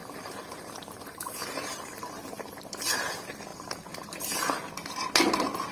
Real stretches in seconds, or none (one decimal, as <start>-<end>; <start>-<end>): 2.7-3.5; 4.5-5.7